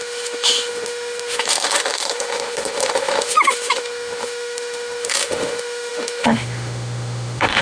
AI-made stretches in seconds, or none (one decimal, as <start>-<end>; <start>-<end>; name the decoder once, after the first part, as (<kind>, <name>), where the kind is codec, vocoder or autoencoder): 0.0-7.6 (autoencoder, DAC-VAE)